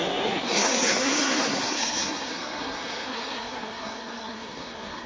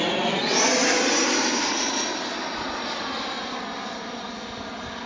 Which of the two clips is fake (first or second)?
first